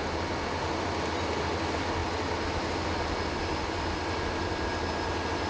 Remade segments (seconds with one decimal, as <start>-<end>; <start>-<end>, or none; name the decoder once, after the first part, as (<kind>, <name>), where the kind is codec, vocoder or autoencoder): none